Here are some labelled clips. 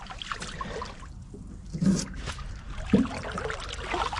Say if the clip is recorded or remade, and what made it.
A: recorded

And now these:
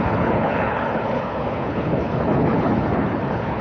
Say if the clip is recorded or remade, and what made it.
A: remade, codec, HILCodec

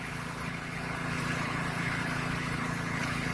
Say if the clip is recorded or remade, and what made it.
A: remade, codec, HILCodec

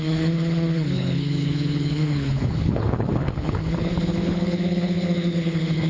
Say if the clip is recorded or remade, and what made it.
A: remade, codec, HILCodec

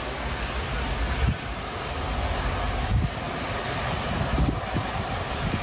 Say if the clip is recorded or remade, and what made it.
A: recorded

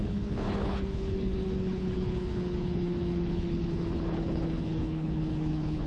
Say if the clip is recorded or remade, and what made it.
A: remade, codec, HILCodec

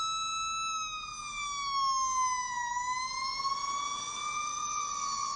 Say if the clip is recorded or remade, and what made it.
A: recorded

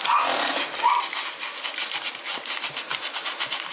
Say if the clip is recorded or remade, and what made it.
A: recorded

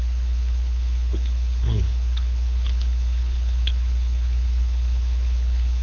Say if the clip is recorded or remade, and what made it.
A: remade, codec, HILCodec